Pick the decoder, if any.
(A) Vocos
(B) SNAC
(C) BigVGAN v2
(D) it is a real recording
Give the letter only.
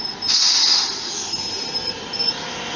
D